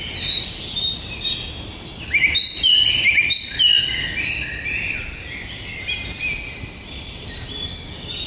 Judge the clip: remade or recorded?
recorded